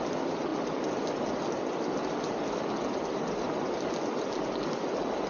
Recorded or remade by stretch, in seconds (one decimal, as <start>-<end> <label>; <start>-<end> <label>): 0.0-5.3 recorded